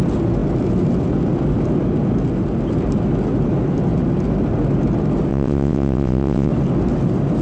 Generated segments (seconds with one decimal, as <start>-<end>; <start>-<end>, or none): 5.3-6.5